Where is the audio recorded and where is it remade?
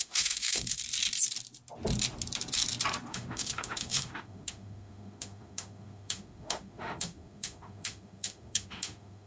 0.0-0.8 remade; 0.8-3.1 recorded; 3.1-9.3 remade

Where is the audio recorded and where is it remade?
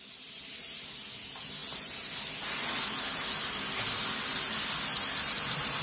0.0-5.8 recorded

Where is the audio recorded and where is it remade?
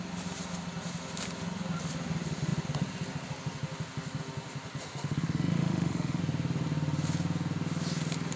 0.0-4.8 recorded; 4.8-6.2 remade; 6.2-8.4 recorded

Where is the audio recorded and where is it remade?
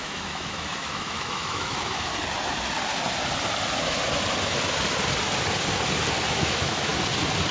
0.0-2.1 remade; 2.1-6.3 recorded; 6.3-6.9 remade; 6.9-7.5 recorded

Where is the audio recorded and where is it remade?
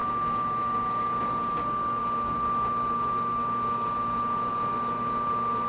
0.0-1.0 remade; 1.0-2.0 recorded; 2.0-4.5 remade; 4.5-5.7 recorded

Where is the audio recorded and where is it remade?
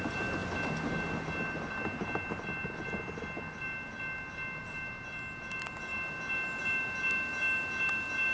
0.0-8.3 recorded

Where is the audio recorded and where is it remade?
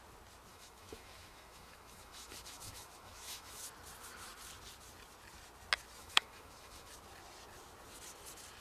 0.0-0.5 recorded; 0.5-3.6 remade; 3.6-6.0 recorded; 6.0-6.9 remade; 6.9-8.6 recorded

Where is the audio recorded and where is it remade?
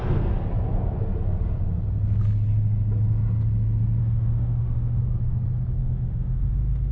0.0-4.0 recorded; 4.0-5.0 remade; 5.0-5.8 recorded; 5.8-6.9 remade